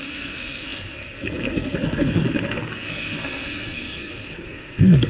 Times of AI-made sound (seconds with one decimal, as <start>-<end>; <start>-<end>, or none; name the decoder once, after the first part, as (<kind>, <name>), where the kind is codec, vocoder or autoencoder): 0.0-5.1 (codec, SNAC)